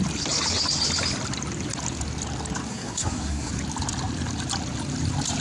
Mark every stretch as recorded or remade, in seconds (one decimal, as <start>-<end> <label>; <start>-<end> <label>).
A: 0.0-2.7 recorded; 2.7-3.5 remade; 3.5-5.4 recorded